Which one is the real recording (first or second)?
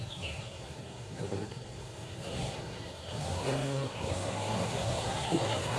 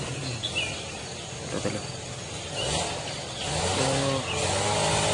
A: second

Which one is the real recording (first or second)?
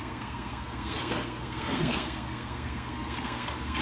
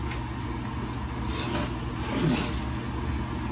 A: second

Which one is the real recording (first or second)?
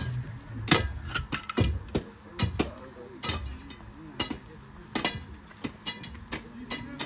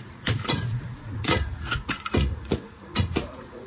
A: first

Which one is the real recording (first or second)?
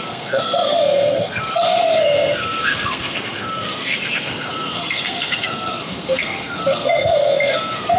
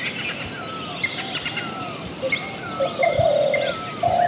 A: second